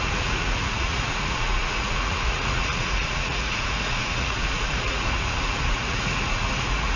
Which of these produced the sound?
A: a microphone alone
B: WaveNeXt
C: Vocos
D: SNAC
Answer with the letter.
C